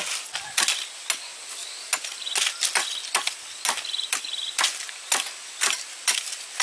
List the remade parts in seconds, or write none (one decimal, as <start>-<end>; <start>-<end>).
none